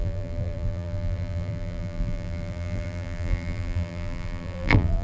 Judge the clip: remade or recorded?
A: remade